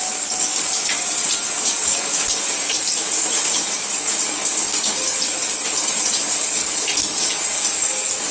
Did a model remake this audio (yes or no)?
yes